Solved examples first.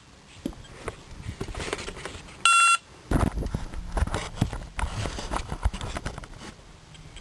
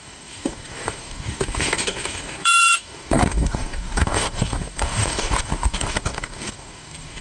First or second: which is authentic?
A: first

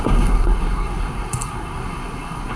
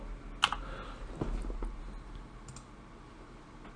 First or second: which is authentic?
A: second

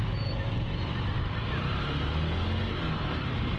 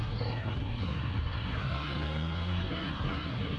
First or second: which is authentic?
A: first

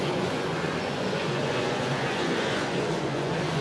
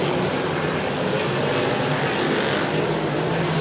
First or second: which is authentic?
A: second